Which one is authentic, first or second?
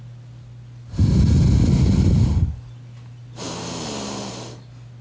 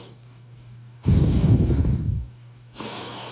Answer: first